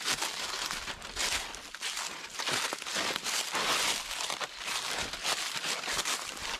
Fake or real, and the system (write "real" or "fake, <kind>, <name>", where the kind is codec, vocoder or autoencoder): real